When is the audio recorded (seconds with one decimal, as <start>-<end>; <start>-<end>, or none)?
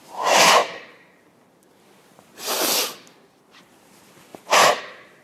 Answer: 0.6-3.7